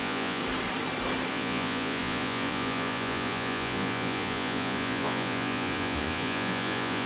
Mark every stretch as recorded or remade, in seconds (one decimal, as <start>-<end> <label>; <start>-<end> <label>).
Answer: 0.0-0.4 remade; 0.4-1.3 recorded; 1.3-7.1 remade